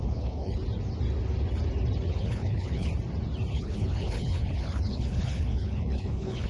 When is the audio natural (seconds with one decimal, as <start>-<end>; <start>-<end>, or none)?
0.6-2.1; 2.9-3.5